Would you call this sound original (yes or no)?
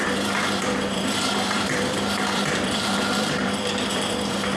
no